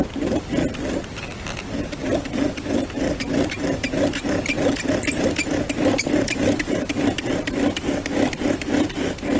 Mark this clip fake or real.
real